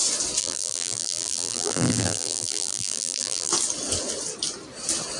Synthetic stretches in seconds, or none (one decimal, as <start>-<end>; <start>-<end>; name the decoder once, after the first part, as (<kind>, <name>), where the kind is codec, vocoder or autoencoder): 0.4-3.5 (vocoder, BigVGAN v2)